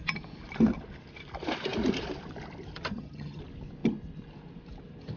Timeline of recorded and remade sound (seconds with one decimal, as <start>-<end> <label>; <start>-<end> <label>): 0.0-2.9 recorded; 2.9-3.4 remade; 3.4-5.2 recorded